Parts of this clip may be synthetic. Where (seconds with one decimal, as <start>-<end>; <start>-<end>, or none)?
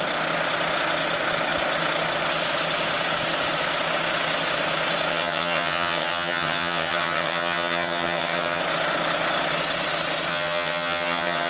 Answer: 5.1-8.6; 10.3-11.5